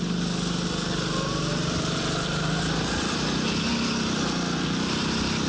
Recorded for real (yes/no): yes